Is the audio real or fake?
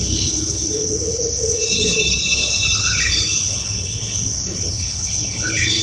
fake